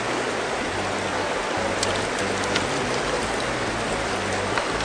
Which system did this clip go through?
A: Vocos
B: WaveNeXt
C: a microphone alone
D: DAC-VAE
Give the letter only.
C